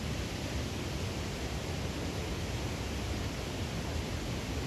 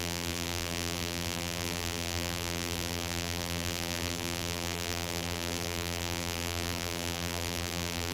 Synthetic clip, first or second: second